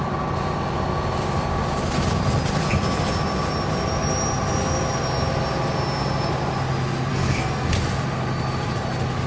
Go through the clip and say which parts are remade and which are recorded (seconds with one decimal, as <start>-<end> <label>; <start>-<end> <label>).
0.0-7.1 recorded; 7.1-7.7 remade; 7.7-9.3 recorded

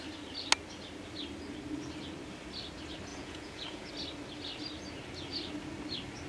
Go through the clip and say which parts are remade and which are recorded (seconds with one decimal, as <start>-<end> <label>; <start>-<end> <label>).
0.0-3.1 recorded; 3.1-3.9 remade; 3.9-6.3 recorded

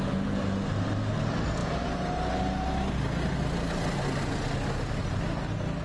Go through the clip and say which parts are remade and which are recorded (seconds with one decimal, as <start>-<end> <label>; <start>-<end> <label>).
0.0-5.8 recorded

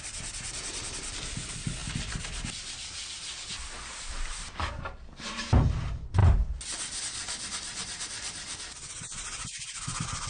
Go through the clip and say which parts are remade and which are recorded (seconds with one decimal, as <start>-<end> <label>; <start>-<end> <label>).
0.0-10.3 recorded

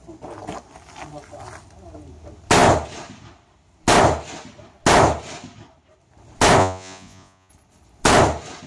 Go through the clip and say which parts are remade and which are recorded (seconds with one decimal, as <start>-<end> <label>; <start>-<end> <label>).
0.0-6.6 recorded; 6.6-7.5 remade; 7.5-8.7 recorded

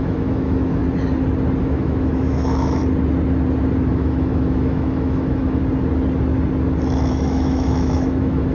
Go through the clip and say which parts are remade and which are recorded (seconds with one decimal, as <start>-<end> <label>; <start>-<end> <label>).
0.0-0.8 remade; 0.8-1.6 recorded; 1.6-2.8 remade; 2.8-3.9 recorded; 3.9-5.6 remade; 5.6-7.1 recorded; 7.1-8.5 remade

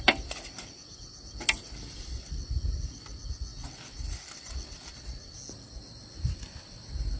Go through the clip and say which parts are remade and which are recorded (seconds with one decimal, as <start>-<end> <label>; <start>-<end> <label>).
0.0-7.2 recorded

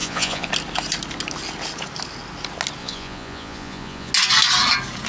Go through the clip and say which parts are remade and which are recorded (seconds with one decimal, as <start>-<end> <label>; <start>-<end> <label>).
0.0-0.5 remade; 0.5-2.8 recorded; 2.8-4.1 remade; 4.1-5.1 recorded